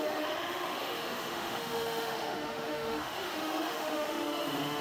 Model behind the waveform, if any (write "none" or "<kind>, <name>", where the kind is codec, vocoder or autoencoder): autoencoder, DAC-VAE